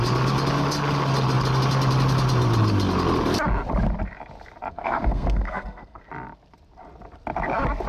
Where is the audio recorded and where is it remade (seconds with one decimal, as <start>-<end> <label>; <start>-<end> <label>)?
0.0-4.7 recorded; 4.7-6.0 remade; 6.0-7.9 recorded